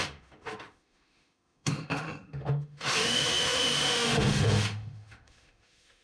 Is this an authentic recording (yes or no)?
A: no